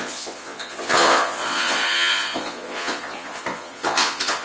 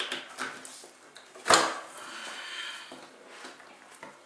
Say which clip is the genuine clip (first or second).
second